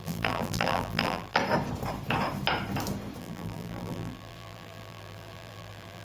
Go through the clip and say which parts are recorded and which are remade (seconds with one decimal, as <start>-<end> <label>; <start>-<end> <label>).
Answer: 0.0-1.4 remade; 1.4-3.2 recorded; 3.2-6.0 remade